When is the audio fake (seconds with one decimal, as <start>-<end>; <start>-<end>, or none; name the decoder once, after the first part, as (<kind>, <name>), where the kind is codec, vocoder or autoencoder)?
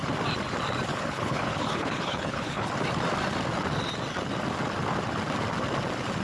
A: 0.9-2.7 (codec, HILCodec)